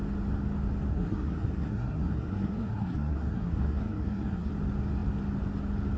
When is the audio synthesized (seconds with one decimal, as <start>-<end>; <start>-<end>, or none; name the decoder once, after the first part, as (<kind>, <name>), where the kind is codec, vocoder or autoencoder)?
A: 0.9-4.5 (codec, SNAC)

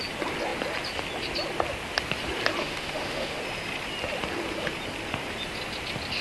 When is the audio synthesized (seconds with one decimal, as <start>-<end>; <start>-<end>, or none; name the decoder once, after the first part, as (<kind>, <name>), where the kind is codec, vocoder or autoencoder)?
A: 2.6-3.4 (autoencoder, DAC-VAE)

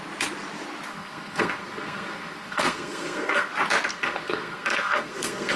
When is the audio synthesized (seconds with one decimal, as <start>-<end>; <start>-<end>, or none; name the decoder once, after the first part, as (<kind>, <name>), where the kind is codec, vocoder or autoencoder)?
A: 0.9-3.5 (codec, SNAC); 3.9-5.6

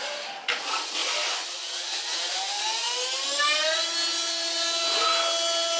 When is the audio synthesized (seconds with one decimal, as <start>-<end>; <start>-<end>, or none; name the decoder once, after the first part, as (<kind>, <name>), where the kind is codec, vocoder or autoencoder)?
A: none

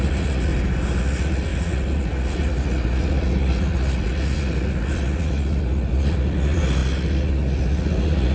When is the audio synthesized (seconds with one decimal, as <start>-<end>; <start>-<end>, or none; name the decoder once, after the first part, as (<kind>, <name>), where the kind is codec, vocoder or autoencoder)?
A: 0.0-0.5 (vocoder, Vocos); 1.0-8.3

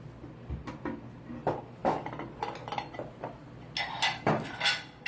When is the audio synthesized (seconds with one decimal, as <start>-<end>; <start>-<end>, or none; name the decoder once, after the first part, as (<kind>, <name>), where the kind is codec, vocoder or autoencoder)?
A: none

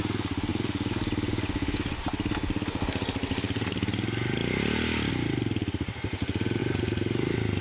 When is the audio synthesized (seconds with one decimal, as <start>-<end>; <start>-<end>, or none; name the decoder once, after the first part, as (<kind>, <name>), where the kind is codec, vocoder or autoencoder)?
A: none